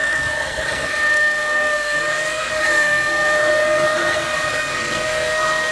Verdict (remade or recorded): remade